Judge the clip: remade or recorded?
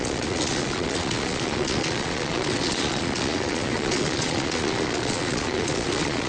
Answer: remade